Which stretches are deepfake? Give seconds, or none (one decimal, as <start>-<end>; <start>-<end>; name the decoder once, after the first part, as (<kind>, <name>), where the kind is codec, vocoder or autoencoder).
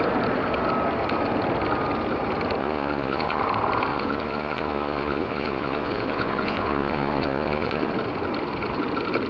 2.6-3.4 (vocoder, Vocos); 3.9-7.9